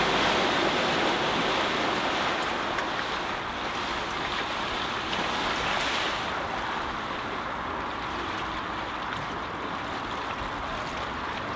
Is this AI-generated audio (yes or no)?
no